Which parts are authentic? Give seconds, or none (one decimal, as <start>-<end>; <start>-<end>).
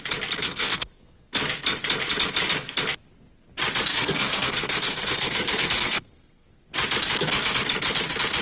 0.0-0.4; 1.3-3.9; 6.7-8.4